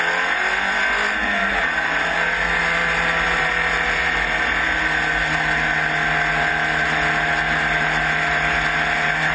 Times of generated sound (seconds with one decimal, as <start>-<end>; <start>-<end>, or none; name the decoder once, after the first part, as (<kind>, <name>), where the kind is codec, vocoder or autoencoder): 1.4-1.9 (vocoder, BigVGAN v2); 2.8-3.5